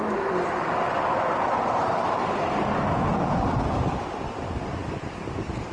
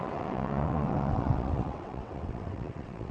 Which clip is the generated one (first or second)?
second